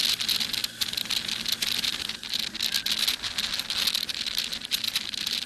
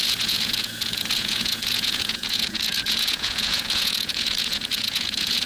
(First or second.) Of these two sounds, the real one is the first